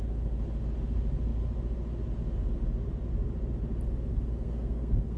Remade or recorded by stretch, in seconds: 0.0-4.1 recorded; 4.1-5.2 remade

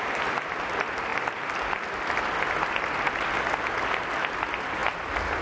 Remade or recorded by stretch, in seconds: 0.0-5.4 recorded